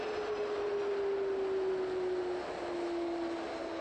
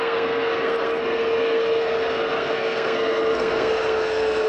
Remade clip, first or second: second